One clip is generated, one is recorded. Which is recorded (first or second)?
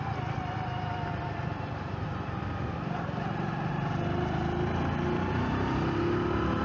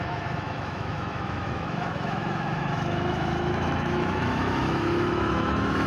first